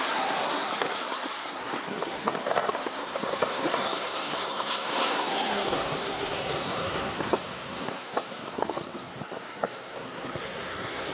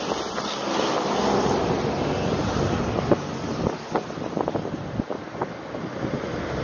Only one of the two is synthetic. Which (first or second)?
first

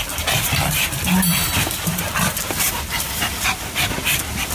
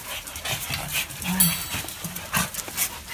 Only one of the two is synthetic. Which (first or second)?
first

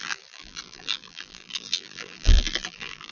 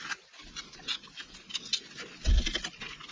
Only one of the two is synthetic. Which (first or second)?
first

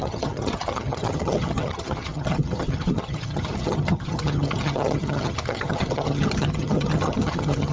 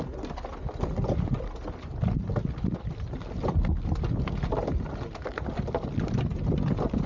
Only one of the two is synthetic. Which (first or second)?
first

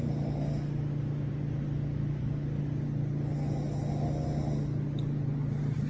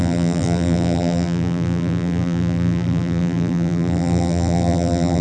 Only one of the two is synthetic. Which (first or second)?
second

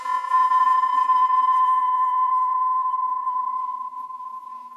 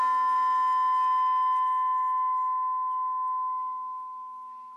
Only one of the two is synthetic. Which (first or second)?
first